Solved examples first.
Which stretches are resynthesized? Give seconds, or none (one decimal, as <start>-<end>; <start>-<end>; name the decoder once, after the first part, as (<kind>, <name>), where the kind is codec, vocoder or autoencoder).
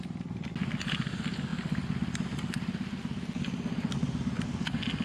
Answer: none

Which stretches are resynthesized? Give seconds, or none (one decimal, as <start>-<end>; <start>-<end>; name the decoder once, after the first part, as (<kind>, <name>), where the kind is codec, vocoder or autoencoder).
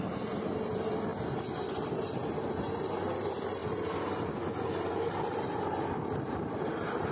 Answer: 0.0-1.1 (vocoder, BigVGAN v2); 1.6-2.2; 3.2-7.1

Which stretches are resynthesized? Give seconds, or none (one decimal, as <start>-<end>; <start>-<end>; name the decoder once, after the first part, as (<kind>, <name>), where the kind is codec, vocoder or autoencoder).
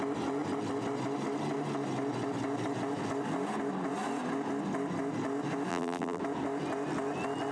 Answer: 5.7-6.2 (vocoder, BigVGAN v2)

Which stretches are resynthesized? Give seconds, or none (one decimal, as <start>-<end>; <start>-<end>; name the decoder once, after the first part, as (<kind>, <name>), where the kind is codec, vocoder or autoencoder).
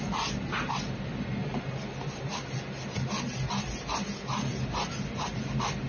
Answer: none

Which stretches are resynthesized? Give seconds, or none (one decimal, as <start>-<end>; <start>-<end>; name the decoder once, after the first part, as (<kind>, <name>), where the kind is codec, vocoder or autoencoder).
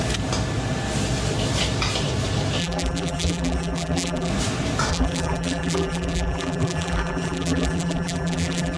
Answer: 2.6-4.3 (vocoder, BigVGAN v2); 4.9-8.8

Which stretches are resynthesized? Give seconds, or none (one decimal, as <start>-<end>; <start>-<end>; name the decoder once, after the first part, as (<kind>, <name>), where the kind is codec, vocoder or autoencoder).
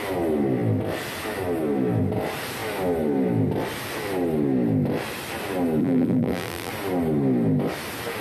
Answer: 5.8-6.7 (vocoder, BigVGAN v2)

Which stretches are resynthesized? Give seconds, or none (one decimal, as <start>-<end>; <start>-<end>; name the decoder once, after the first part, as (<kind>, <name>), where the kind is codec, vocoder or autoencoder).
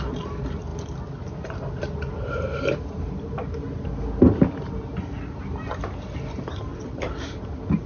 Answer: 6.7-7.3 (vocoder, BigVGAN v2)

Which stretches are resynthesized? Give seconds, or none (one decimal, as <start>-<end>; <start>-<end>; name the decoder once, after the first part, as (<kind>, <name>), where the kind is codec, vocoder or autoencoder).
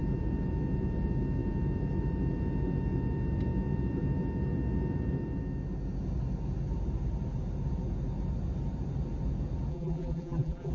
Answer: 9.7-10.7 (vocoder, BigVGAN v2)